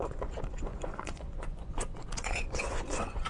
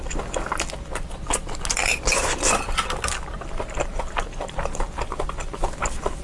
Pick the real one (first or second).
second